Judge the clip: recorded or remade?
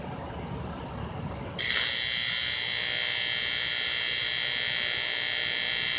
recorded